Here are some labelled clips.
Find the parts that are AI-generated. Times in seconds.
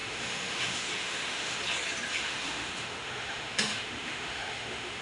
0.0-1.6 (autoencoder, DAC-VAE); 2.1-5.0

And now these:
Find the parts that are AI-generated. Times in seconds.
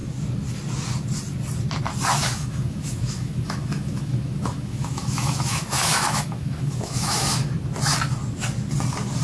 2.2-7.5 (autoencoder, DAC-VAE)